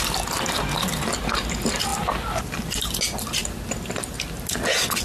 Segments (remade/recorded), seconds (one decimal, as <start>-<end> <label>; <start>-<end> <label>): 0.0-1.9 recorded; 1.9-3.0 remade; 3.0-5.0 recorded